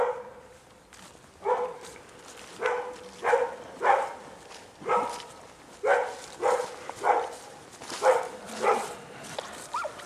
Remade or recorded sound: recorded